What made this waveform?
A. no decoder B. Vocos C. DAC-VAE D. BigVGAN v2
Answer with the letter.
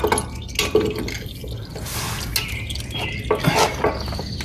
A